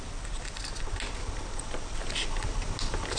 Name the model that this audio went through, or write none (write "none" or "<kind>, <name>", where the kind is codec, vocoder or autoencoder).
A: none